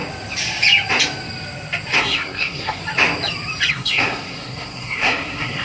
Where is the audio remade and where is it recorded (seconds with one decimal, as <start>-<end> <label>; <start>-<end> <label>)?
0.0-2.0 recorded; 2.0-2.8 remade; 2.8-3.7 recorded; 3.7-5.6 remade